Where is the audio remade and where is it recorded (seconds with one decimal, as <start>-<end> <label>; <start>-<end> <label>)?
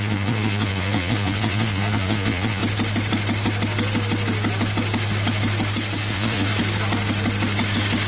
0.0-2.6 remade; 2.6-6.1 recorded; 6.1-6.5 remade; 6.5-8.1 recorded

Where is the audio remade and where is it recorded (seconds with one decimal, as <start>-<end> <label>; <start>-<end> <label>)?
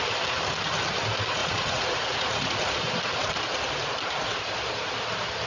0.0-1.4 recorded; 1.4-2.9 remade; 2.9-5.5 recorded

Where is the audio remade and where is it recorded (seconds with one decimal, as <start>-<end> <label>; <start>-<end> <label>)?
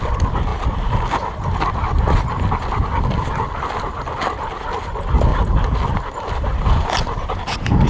0.0-0.5 recorded; 0.5-1.3 remade; 1.3-5.3 recorded; 5.3-7.9 remade